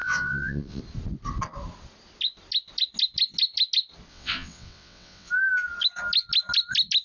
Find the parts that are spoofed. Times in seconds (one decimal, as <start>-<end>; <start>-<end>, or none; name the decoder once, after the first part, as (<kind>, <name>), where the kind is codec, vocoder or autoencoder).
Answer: 0.0-0.8 (vocoder, WaveNeXt); 4.1-5.3